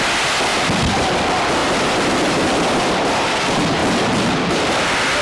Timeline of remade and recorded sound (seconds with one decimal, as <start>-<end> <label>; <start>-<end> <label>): 0.0-0.5 recorded; 0.5-1.1 remade; 1.1-1.6 recorded; 1.6-3.4 remade; 3.4-3.8 recorded; 3.8-4.8 remade; 4.8-5.2 recorded